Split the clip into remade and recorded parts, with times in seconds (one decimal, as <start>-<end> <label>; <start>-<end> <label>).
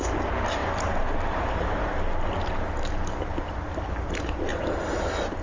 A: 0.0-5.4 recorded